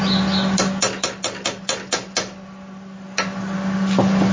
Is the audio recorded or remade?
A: recorded